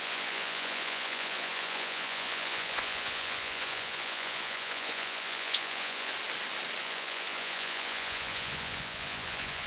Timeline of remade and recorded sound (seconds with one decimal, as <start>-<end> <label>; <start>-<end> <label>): 0.0-6.1 remade; 6.1-6.8 recorded; 6.8-9.7 remade